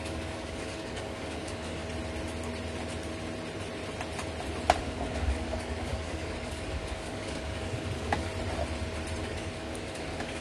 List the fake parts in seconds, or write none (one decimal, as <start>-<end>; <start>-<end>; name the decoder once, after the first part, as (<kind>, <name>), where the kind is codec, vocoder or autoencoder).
0.0-1.8 (codec, DAC); 4.8-8.3; 9.2-10.4